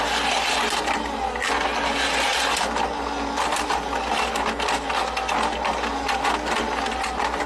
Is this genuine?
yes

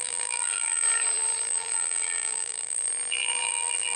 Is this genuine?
no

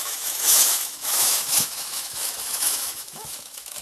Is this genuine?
no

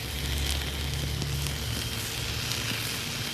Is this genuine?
yes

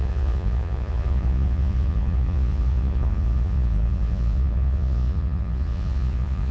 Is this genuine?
no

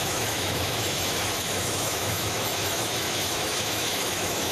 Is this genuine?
no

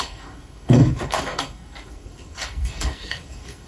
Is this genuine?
no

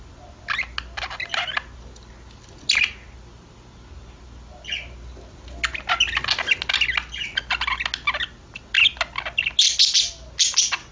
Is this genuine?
yes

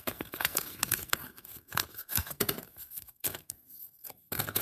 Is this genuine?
no